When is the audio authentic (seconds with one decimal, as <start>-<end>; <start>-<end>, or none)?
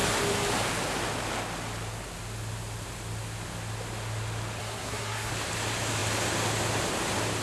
0.0-4.6; 5.3-7.4